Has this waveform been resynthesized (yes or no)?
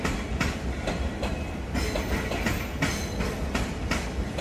no